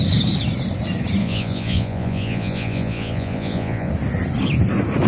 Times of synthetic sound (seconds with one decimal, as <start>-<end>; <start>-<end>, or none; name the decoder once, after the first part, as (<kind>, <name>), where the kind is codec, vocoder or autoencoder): 1.2-3.9 (vocoder, Vocos)